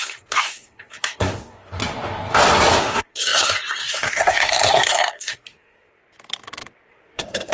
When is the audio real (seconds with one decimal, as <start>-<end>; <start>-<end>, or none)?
1.8-2.8; 6.0-6.9